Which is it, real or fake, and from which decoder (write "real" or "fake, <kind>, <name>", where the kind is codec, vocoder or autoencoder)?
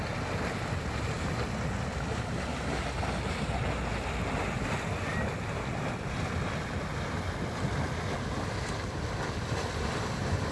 real